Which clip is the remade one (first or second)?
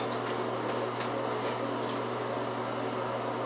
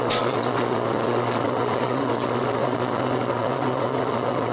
second